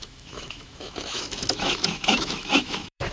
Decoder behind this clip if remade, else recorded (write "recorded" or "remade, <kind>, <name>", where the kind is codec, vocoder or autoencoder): remade, autoencoder, DAC-VAE